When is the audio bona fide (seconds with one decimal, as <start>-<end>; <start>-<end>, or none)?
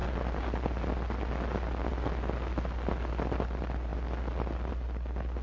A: 0.0-5.4